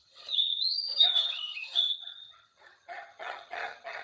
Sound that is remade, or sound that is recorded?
remade